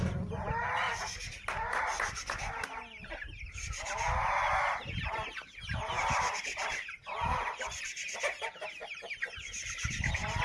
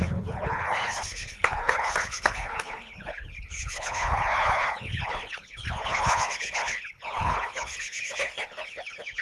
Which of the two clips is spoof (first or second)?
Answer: second